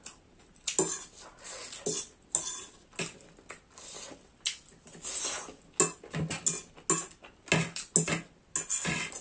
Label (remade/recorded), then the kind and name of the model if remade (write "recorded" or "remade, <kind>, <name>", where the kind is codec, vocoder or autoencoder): recorded